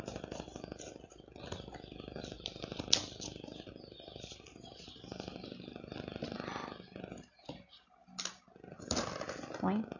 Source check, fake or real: real